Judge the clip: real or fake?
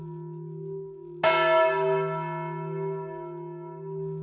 real